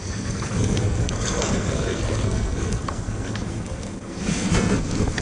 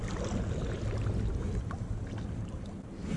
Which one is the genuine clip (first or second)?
second